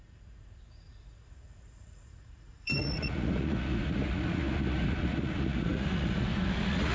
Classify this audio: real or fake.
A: fake